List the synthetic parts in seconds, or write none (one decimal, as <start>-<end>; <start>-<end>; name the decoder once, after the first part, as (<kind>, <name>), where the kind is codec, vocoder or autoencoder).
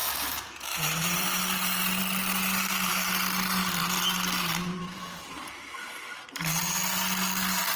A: 0.0-2.0 (vocoder, BigVGAN v2); 4.7-5.3